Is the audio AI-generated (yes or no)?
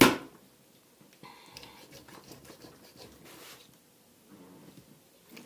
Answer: no